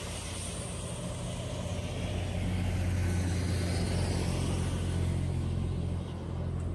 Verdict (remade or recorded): recorded